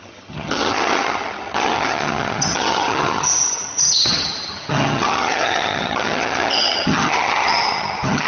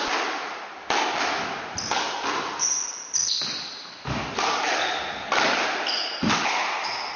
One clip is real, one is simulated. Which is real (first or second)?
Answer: second